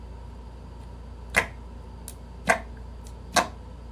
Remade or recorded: recorded